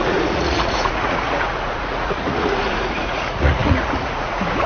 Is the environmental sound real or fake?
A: fake